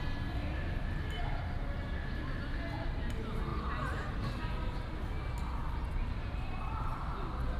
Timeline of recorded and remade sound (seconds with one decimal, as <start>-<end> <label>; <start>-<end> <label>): 0.0-3.5 recorded; 3.5-4.3 remade; 4.3-5.9 recorded; 5.9-6.9 remade; 6.9-7.6 recorded